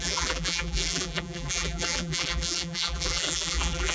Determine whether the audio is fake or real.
fake